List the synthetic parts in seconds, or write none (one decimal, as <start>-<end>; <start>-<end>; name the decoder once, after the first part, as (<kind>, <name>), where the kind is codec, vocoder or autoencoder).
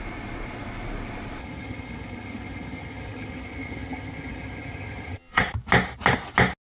1.4-5.4 (vocoder, HiFi-GAN)